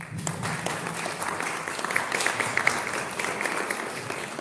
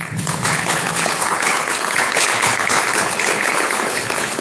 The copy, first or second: second